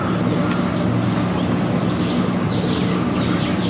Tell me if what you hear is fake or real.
real